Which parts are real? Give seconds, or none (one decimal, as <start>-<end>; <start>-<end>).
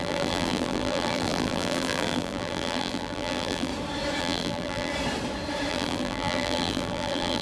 3.7-4.2; 4.9-5.7